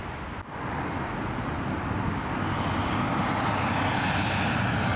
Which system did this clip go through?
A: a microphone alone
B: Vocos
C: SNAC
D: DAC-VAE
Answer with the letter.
A